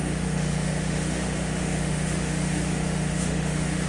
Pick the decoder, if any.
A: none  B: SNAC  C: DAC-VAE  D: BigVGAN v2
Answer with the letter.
C